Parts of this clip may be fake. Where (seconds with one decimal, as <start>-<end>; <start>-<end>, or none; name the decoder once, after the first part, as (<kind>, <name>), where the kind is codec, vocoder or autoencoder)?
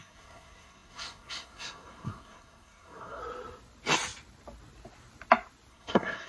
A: 0.0-3.2 (codec, SNAC); 5.7-6.3